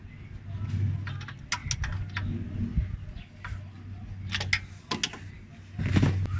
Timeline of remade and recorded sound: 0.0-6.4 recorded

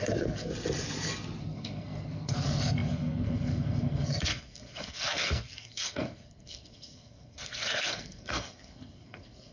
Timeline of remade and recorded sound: 0.0-0.5 remade; 0.5-1.4 recorded; 1.4-9.5 remade

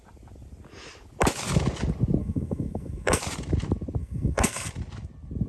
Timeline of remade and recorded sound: 0.0-2.2 recorded; 2.2-3.2 remade; 3.2-4.0 recorded; 4.0-4.7 remade; 4.7-5.5 recorded

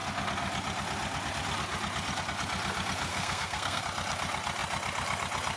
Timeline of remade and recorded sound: 0.0-3.1 recorded; 3.1-3.8 remade; 3.8-5.6 recorded

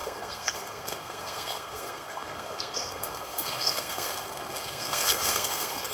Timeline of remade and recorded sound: 0.0-5.9 remade